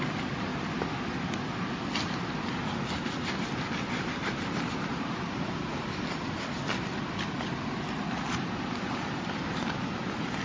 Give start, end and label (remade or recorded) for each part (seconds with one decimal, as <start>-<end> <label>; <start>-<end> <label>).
0.0-10.4 recorded